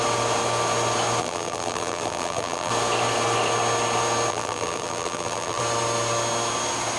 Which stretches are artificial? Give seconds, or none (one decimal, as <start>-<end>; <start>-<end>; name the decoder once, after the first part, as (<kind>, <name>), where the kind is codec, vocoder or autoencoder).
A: 1.2-2.7 (vocoder, BigVGAN v2); 4.3-5.6